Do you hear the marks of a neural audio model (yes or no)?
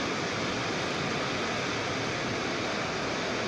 no